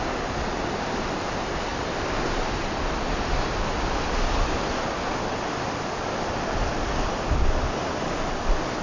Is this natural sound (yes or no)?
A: yes